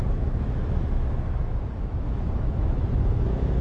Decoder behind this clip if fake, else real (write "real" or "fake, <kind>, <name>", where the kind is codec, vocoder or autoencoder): fake, autoencoder, DAC-VAE